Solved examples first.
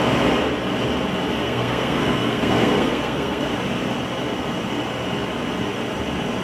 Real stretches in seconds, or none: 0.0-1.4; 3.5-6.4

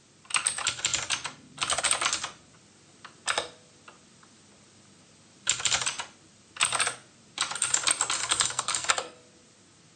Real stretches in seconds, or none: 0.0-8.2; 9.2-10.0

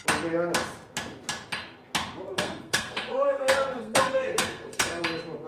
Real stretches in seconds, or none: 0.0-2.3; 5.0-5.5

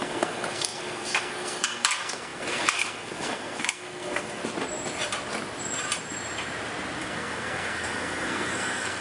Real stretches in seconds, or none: 4.4-7.0

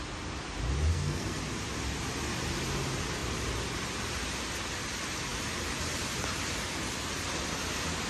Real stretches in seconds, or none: 0.0-0.9; 1.4-8.1

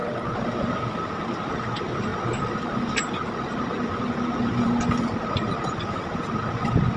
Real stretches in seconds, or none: 0.0-7.0

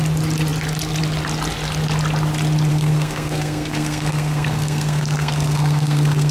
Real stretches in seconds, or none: 0.0-2.7